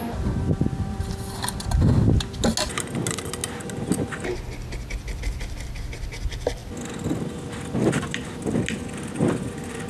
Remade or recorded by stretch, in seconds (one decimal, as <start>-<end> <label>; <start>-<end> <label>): 0.0-9.9 recorded